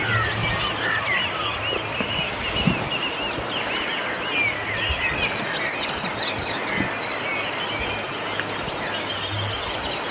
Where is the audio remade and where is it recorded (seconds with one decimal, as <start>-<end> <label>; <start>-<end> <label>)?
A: 0.0-10.1 recorded